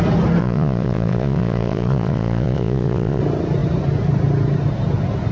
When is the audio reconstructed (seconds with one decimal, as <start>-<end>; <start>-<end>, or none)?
0.4-3.2